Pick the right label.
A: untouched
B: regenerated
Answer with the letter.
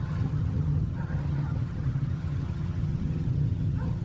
B